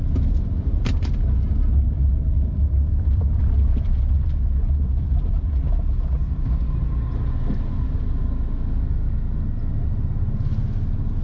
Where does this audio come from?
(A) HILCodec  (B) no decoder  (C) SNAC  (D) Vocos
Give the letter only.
B